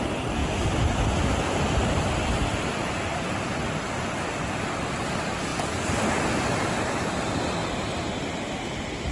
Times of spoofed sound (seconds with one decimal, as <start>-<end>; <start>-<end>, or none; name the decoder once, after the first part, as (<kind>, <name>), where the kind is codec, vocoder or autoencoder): 7.6-9.1 (vocoder, BigVGAN v2)